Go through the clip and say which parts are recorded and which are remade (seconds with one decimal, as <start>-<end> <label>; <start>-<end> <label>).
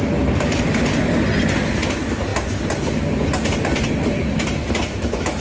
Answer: 0.0-4.6 recorded; 4.6-5.4 remade